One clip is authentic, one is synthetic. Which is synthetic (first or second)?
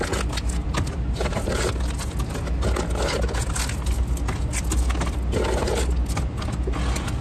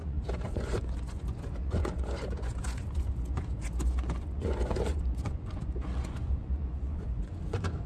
second